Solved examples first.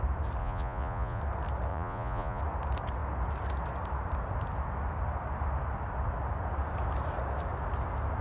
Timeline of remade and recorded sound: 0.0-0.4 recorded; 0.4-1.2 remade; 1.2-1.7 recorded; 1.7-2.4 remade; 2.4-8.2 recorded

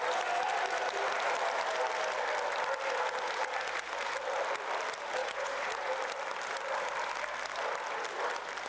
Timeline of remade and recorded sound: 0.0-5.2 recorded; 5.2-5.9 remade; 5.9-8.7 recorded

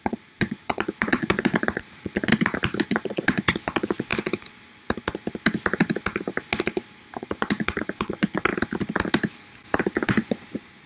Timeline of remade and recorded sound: 0.0-2.3 remade; 2.3-2.8 recorded; 2.8-4.1 remade; 4.1-7.2 recorded; 7.2-8.5 remade; 8.5-9.8 recorded; 9.8-10.9 remade

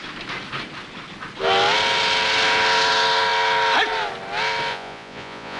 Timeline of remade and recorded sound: 0.0-4.7 recorded; 4.7-5.6 remade